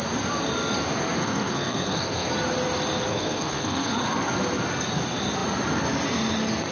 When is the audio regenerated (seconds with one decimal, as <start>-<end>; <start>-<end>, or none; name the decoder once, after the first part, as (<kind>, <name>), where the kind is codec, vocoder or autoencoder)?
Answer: 1.2-2.3 (codec, SNAC); 3.1-3.9